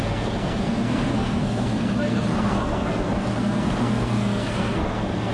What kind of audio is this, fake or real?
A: fake